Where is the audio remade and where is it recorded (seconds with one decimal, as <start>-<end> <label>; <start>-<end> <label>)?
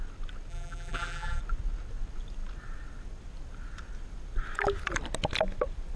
0.0-0.5 recorded; 0.5-1.4 remade; 1.4-6.0 recorded